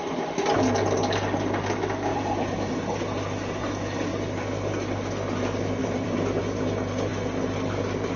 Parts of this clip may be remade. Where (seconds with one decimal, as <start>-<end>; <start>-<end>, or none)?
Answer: 2.1-2.7; 4.1-4.7; 5.8-6.4; 7.1-7.7